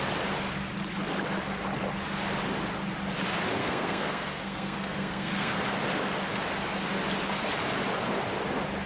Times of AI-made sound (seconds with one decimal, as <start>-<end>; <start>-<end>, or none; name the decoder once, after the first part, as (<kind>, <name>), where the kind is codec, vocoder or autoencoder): 3.6-5.6 (codec, SNAC)